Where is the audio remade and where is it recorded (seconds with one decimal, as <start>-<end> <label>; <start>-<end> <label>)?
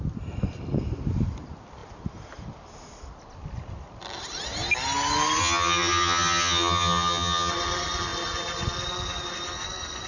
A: 0.0-5.4 recorded; 5.4-7.5 remade; 7.5-10.1 recorded